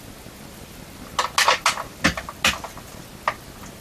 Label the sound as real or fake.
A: real